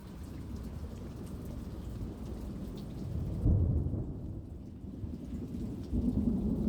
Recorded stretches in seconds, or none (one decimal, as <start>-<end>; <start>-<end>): 0.6-6.7